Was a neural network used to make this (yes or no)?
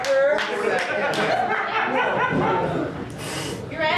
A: no